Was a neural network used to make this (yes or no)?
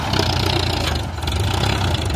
no